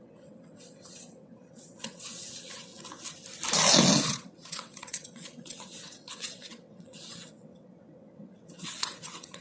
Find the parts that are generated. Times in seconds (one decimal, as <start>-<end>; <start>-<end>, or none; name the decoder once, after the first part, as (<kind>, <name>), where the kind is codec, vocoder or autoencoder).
0.0-2.7 (vocoder, WaveNeXt); 4.0-9.4